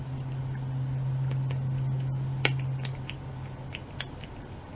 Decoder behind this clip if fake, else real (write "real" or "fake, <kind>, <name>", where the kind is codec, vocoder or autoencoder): real